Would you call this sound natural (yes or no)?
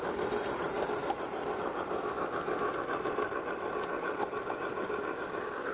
yes